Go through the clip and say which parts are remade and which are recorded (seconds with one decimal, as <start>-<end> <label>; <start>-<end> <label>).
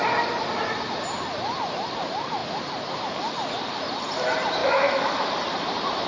0.0-4.6 recorded; 4.6-5.3 remade; 5.3-6.1 recorded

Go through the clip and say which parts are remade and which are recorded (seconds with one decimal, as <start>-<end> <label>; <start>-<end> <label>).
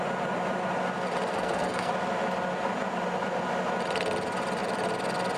0.0-1.3 recorded; 1.3-1.9 remade; 1.9-5.4 recorded